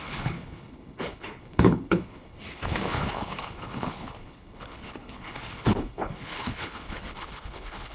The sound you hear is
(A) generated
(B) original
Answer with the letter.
A